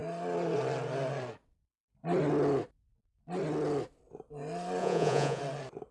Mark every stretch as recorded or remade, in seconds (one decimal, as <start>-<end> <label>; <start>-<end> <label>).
0.0-4.8 recorded; 4.8-5.4 remade; 5.4-5.9 recorded